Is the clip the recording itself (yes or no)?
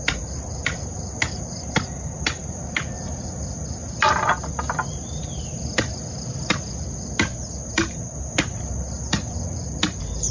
yes